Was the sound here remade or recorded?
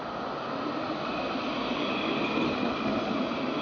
recorded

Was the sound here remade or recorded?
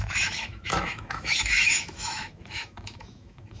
remade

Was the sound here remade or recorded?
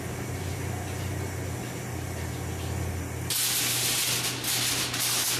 recorded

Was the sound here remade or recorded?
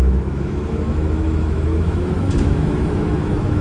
remade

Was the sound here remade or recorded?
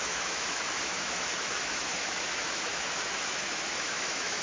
remade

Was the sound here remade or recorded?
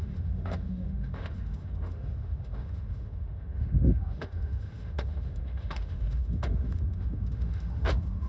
remade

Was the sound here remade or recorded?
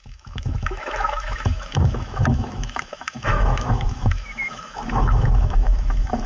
remade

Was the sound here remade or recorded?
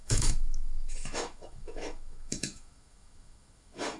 remade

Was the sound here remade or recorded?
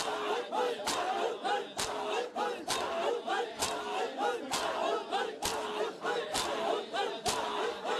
recorded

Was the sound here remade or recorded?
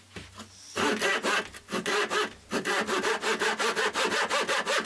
recorded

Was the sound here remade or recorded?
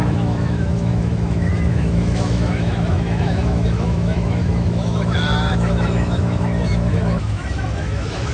remade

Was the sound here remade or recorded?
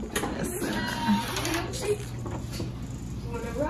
recorded